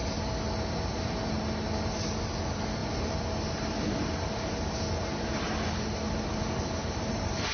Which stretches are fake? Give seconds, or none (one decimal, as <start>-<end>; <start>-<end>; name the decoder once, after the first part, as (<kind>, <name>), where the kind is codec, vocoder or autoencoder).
none